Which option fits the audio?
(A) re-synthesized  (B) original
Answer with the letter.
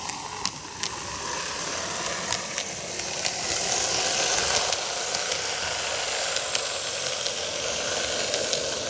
B